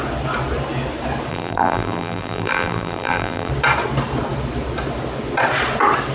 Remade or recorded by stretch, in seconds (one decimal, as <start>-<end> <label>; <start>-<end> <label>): 0.0-1.3 recorded; 1.3-3.5 remade; 3.5-6.1 recorded